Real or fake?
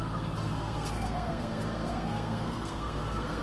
fake